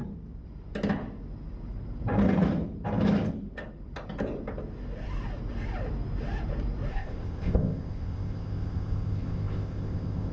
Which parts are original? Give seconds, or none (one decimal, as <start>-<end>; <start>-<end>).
0.0-6.9